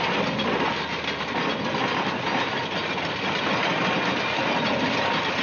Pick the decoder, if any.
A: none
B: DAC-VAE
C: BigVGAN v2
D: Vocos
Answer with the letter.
A